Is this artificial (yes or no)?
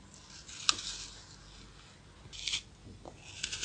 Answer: no